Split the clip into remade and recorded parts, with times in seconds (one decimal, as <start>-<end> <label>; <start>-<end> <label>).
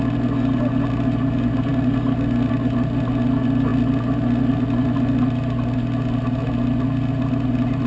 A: 0.0-7.9 recorded